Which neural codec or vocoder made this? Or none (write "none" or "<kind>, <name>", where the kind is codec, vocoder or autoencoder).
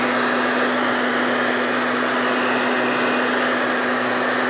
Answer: none